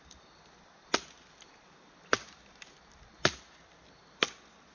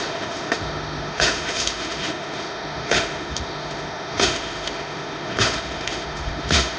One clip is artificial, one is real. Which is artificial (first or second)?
second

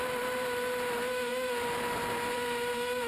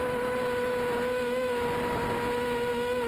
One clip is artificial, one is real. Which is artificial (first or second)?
first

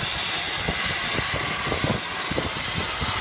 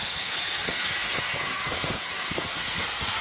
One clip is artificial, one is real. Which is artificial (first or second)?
second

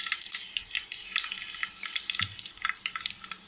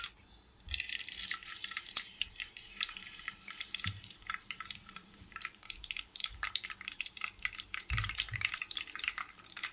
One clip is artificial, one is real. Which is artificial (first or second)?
second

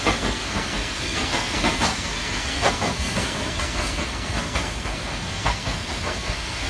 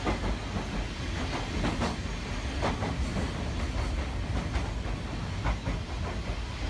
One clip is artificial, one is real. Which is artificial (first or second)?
first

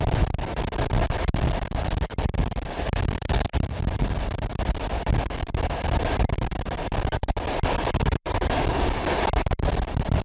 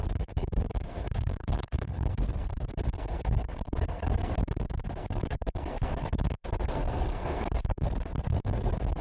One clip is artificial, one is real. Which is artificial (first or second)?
second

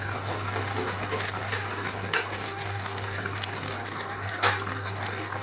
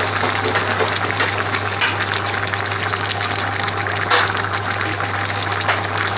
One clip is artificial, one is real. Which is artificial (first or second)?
first